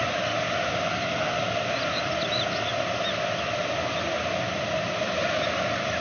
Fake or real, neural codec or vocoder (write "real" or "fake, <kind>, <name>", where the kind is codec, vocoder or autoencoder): real